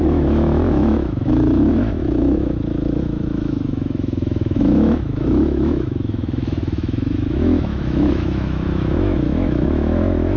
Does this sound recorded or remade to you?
remade